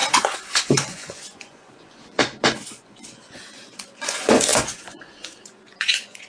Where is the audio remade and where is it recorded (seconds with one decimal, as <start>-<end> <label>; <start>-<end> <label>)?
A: 0.0-6.3 remade